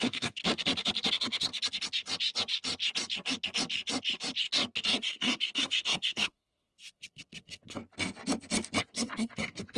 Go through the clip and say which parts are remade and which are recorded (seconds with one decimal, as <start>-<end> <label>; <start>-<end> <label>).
0.0-0.4 remade; 0.4-1.1 recorded; 1.1-1.5 remade; 1.5-4.8 recorded; 4.8-7.8 remade; 7.8-8.8 recorded; 8.8-9.8 remade